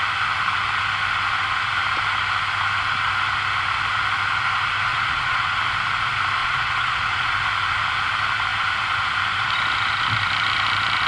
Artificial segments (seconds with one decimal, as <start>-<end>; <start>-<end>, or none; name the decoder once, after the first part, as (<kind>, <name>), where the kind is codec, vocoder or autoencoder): 4.9-5.6 (vocoder, Vocos); 6.4-7.3